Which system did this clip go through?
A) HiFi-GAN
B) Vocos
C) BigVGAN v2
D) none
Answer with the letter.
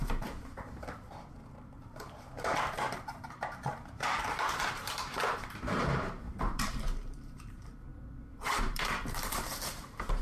C